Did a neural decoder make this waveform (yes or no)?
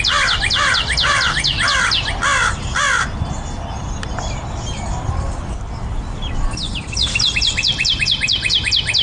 no